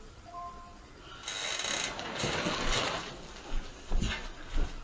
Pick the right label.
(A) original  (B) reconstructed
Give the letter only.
A